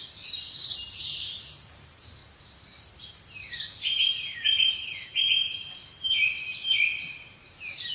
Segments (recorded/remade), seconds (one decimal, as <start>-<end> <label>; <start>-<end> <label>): 0.0-2.2 remade; 2.2-2.8 recorded; 2.8-7.9 remade